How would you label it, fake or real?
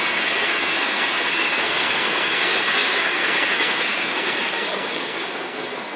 fake